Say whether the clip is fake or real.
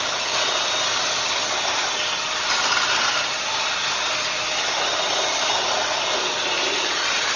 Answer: real